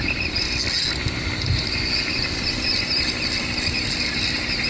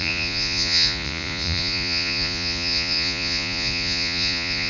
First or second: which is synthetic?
second